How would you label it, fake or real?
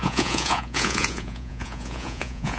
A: fake